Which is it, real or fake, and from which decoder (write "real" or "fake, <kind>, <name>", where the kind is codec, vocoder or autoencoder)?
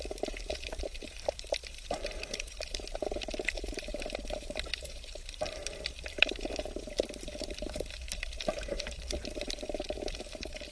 fake, vocoder, BigVGAN v2